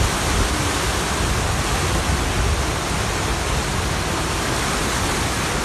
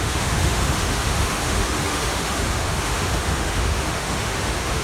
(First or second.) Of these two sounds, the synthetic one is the second